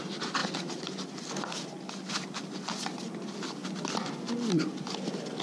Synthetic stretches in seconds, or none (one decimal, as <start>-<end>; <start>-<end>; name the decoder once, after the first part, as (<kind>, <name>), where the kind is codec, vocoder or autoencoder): none